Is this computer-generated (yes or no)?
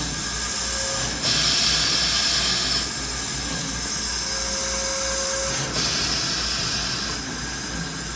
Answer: no